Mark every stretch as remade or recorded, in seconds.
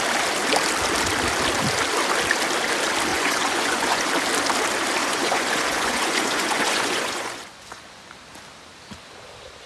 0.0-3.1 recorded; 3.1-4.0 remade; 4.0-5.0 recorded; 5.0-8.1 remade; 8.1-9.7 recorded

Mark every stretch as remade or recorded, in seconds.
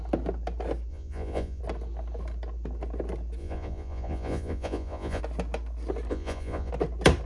0.0-0.9 recorded; 0.9-1.6 remade; 1.6-3.4 recorded; 3.4-5.2 remade; 5.2-6.1 recorded; 6.1-6.7 remade; 6.7-7.3 recorded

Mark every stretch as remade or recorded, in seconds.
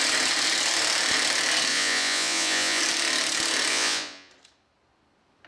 0.0-1.7 recorded; 1.7-2.8 remade; 2.8-3.7 recorded; 3.7-4.3 remade; 4.3-5.5 recorded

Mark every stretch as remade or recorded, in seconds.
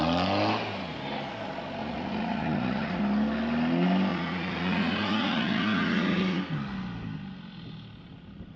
0.0-1.8 recorded; 1.8-3.0 remade; 3.0-4.1 recorded; 4.1-6.4 remade; 6.4-8.6 recorded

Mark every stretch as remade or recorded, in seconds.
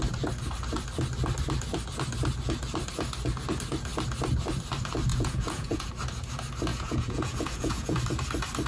0.0-5.1 recorded; 5.1-5.9 remade; 5.9-6.7 recorded; 6.7-8.0 remade; 8.0-8.7 recorded